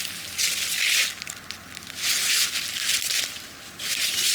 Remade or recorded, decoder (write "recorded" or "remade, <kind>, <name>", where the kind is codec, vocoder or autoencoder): recorded